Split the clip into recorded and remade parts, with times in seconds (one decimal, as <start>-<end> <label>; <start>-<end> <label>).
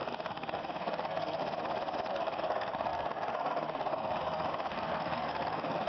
0.0-1.4 remade; 1.4-2.1 recorded; 2.1-5.9 remade